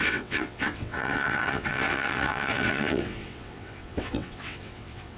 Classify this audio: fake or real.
fake